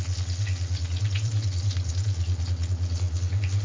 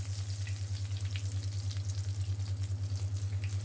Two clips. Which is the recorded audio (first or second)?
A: second